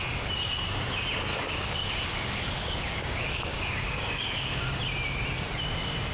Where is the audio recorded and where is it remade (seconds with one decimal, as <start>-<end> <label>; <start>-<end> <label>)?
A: 0.0-1.3 recorded; 1.3-4.8 remade; 4.8-6.1 recorded